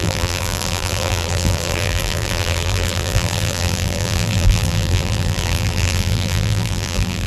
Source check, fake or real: fake